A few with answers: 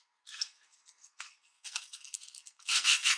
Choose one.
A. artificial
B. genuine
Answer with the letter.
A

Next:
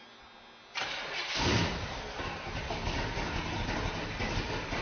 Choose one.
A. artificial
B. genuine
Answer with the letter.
B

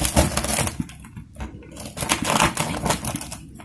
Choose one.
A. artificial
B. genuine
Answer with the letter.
B